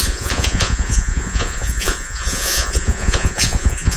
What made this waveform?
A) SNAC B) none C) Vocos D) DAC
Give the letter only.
C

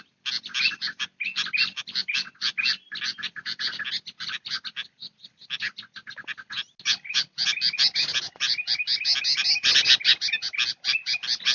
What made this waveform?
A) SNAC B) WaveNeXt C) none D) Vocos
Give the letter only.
C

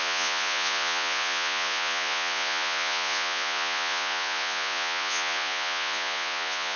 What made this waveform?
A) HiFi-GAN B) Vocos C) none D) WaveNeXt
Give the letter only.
B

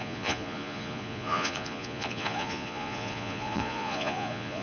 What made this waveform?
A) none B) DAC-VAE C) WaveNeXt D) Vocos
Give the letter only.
D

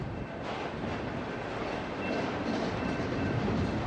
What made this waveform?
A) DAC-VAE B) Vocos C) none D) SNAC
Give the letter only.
C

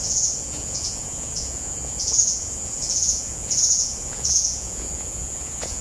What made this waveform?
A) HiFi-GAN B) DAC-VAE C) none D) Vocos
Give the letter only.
D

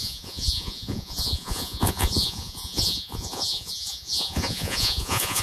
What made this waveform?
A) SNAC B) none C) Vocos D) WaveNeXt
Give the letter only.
C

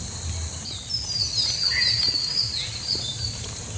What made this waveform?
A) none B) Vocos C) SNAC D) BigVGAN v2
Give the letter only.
A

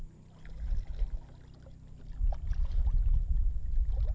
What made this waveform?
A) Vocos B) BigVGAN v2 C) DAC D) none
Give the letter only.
D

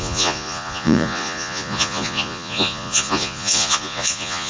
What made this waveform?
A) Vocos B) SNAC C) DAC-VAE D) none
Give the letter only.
A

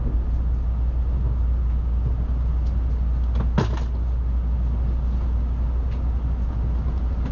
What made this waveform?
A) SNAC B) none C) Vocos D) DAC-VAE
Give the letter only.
B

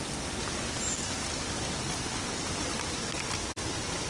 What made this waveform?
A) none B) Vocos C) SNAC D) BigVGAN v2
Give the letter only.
A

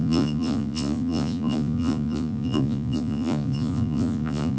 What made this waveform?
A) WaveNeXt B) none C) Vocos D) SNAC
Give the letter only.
C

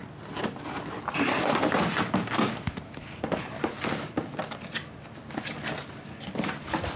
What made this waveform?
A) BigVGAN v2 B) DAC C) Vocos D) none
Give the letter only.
D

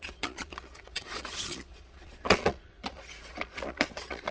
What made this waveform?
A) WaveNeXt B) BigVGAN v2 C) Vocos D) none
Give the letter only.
C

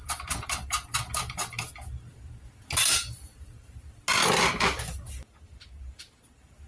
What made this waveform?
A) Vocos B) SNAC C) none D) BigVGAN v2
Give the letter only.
C